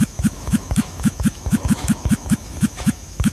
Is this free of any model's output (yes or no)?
no